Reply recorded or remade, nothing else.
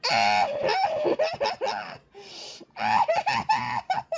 recorded